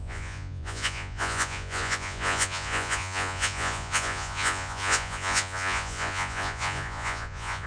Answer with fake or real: fake